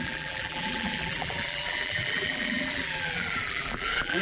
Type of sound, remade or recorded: remade